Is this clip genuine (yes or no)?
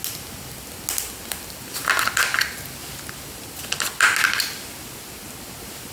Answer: yes